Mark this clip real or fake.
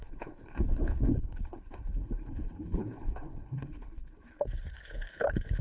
fake